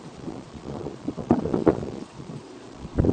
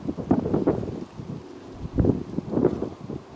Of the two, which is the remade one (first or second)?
first